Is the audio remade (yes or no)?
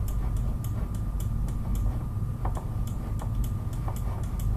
no